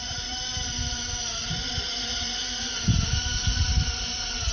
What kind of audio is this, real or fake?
fake